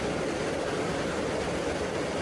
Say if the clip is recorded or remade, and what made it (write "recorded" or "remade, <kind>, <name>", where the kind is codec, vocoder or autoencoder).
remade, vocoder, BigVGAN v2